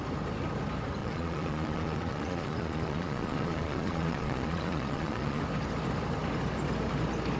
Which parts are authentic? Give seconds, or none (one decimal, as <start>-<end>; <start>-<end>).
0.0-1.0; 5.4-7.4